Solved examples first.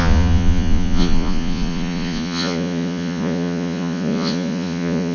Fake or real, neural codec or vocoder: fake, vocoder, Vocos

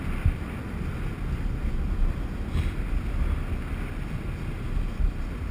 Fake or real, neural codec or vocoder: real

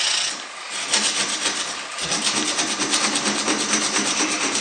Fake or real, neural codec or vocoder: real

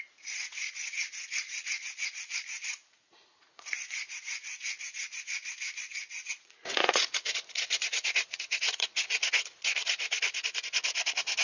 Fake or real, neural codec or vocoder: fake, vocoder, Vocos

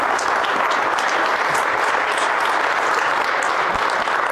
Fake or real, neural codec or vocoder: real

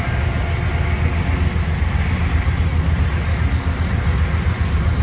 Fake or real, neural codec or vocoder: real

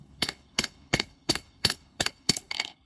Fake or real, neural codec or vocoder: fake, codec, HILCodec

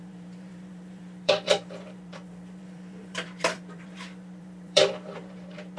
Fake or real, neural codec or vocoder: fake, vocoder, BigVGAN v2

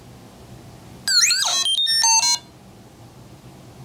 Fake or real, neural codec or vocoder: real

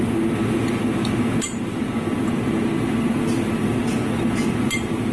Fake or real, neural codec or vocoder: real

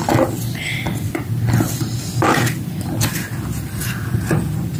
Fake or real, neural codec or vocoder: real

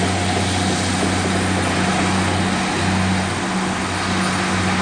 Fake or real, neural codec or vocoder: real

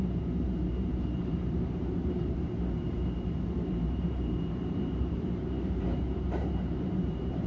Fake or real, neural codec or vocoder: fake, vocoder, BigVGAN v2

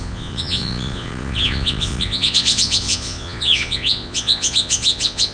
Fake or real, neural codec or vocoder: fake, vocoder, Vocos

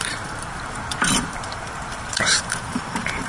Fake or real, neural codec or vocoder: fake, vocoder, BigVGAN v2